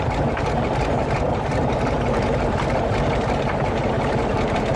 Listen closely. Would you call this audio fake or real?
fake